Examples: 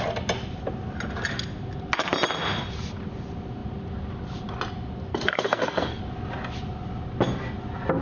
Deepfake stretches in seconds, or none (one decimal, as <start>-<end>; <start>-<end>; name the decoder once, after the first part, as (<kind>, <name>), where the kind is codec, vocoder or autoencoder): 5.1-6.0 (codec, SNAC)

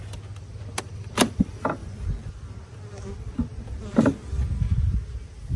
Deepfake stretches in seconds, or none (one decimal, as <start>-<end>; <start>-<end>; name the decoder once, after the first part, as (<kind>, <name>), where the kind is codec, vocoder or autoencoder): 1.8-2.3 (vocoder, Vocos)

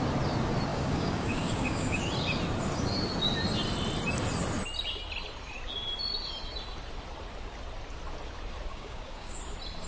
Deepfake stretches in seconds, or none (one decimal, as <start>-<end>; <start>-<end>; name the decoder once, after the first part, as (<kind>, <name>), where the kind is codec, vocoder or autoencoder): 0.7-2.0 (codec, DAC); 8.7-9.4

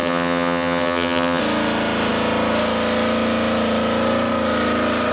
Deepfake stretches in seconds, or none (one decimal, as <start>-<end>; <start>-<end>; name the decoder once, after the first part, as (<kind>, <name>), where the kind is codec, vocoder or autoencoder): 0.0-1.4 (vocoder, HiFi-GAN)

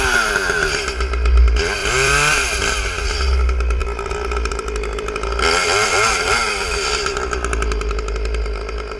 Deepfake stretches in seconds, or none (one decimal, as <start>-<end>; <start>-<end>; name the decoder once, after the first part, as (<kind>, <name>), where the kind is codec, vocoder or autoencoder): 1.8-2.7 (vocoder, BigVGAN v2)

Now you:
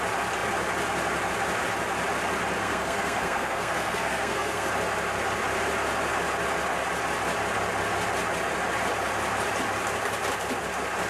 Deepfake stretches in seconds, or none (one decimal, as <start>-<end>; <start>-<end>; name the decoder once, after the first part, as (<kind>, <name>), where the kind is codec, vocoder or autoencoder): 2.6-4.7 (codec, SNAC)

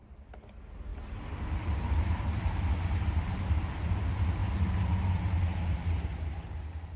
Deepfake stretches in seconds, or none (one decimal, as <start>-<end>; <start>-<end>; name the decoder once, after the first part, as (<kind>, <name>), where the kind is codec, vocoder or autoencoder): 0.9-2.6 (vocoder, BigVGAN v2)

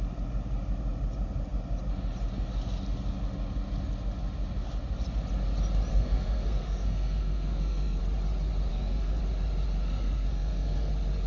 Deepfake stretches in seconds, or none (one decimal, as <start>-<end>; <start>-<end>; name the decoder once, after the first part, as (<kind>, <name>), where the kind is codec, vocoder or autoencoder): 5.9-8.0 (codec, SNAC); 8.7-9.2; 9.8-10.9